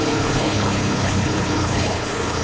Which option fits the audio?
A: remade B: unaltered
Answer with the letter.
A